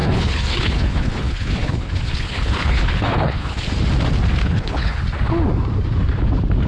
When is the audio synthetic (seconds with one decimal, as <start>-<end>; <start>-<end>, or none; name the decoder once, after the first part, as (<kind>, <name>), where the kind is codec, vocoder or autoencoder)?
0.0-3.6 (codec, HILCodec); 4.4-5.0